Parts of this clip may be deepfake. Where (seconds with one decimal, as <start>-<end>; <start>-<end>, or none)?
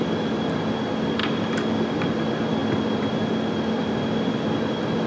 none